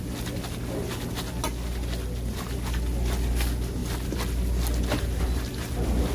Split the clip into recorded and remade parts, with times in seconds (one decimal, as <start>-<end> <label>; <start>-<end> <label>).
0.0-6.1 recorded